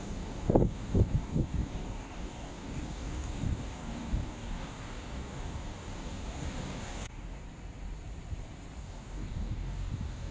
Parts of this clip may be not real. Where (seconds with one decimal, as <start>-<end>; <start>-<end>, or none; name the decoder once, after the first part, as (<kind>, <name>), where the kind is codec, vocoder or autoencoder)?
0.0-7.4 (codec, DAC); 8.8-10.3